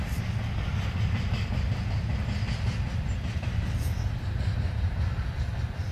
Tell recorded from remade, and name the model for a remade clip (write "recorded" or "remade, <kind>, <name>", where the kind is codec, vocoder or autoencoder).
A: recorded